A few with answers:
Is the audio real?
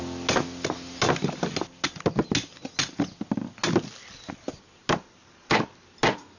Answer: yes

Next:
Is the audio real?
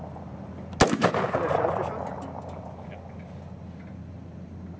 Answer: yes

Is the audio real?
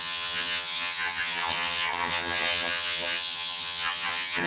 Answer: no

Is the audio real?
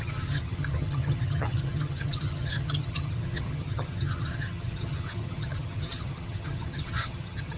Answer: no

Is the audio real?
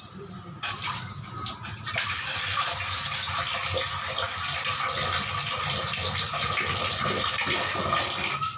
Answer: yes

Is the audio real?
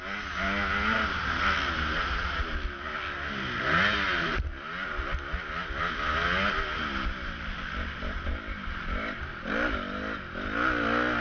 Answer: yes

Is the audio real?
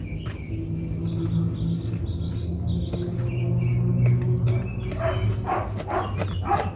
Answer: yes